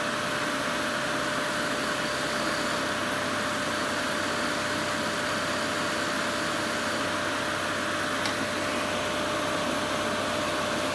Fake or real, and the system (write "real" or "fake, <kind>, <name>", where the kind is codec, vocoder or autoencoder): real